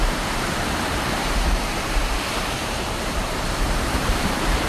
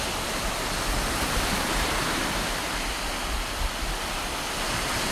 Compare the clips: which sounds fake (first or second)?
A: first